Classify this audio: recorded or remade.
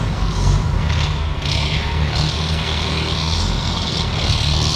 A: remade